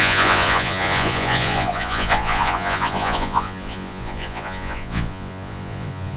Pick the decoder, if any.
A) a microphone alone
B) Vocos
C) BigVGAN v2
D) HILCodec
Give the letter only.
B